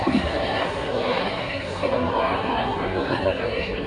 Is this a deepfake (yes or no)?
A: yes